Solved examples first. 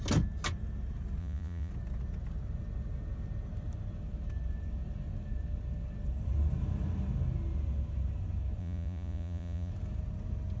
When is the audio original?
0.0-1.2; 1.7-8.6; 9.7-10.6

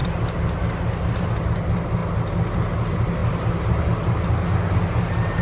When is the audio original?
0.0-5.4

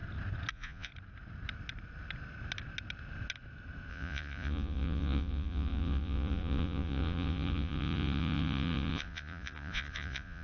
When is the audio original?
0.0-0.5; 0.9-3.9

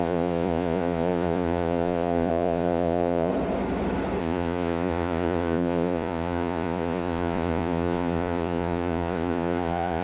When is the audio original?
3.3-4.2

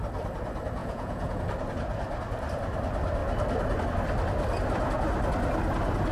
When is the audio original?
0.0-0.8; 1.4-6.1

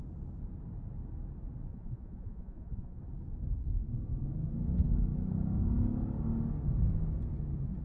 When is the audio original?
0.0-1.7; 3.0-7.8

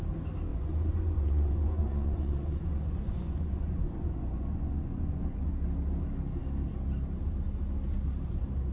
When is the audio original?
0.0-0.5; 5.5-8.7